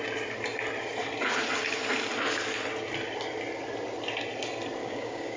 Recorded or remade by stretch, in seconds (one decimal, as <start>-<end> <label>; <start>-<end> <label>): 0.0-4.8 recorded; 4.8-5.4 remade